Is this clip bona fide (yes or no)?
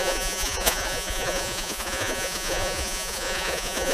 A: no